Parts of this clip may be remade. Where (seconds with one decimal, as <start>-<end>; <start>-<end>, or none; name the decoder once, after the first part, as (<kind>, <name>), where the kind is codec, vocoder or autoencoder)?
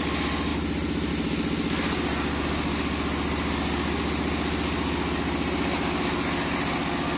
none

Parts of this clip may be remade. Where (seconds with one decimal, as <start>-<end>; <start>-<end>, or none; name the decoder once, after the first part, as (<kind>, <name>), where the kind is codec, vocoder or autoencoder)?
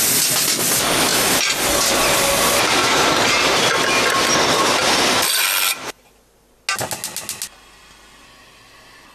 2.8-3.7 (vocoder, BigVGAN v2)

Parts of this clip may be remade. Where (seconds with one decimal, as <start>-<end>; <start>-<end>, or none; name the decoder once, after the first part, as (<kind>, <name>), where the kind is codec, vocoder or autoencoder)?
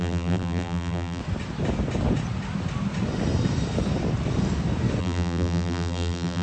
0.0-1.2 (vocoder, BigVGAN v2); 5.0-6.4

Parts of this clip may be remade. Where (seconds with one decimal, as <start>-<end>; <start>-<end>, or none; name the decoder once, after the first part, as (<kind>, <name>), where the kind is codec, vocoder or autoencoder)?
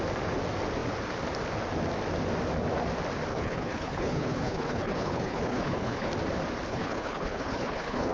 3.3-6.1 (codec, HILCodec); 6.7-8.1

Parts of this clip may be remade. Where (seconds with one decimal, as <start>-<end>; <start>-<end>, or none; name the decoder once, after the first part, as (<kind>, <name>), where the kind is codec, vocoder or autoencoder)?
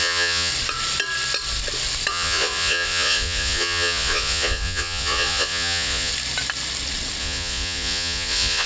0.0-0.5 (vocoder, Vocos); 2.1-6.1; 7.2-8.7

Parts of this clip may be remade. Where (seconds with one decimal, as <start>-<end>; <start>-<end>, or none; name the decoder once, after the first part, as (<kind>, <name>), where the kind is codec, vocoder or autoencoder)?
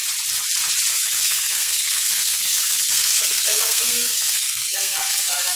0.9-5.6 (codec, SNAC)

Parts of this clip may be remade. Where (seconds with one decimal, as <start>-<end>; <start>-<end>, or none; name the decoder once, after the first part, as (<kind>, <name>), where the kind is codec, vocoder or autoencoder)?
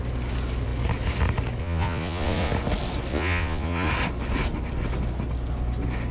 1.6-2.5 (vocoder, Vocos); 3.1-3.9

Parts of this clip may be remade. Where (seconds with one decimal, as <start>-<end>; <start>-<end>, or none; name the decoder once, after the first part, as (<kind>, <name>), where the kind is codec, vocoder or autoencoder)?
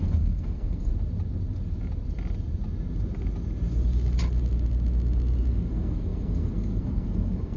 0.0-0.9 (codec, SNAC); 5.5-7.6